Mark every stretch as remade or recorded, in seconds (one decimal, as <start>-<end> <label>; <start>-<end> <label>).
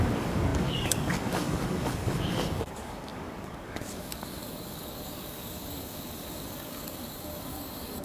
0.0-8.0 remade